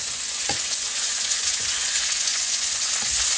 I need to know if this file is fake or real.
fake